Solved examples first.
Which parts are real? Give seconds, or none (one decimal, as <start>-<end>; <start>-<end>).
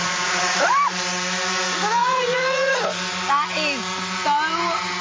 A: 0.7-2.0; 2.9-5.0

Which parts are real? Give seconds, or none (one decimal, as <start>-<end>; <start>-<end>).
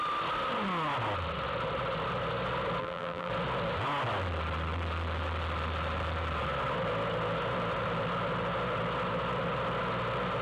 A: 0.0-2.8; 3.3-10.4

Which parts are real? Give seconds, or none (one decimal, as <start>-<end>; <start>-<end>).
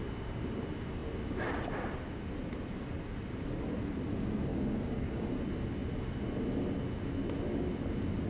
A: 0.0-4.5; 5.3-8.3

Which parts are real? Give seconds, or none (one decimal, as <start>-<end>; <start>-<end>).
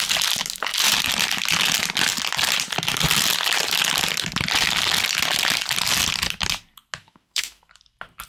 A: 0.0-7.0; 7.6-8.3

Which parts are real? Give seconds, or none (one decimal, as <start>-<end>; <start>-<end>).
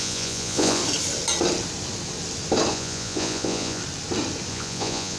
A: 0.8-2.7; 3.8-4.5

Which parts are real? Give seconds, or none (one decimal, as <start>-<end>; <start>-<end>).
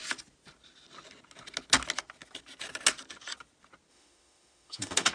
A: 0.0-3.9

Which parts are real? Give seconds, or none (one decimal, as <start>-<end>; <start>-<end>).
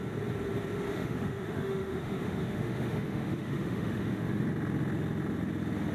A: 0.0-0.9; 4.4-5.9